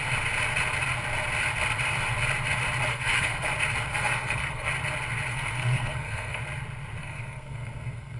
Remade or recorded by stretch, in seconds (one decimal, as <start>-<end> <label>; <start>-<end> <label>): 0.0-2.9 recorded; 2.9-3.5 remade; 3.5-3.9 recorded; 3.9-4.7 remade; 4.7-5.3 recorded; 5.3-6.4 remade; 6.4-7.0 recorded; 7.0-8.2 remade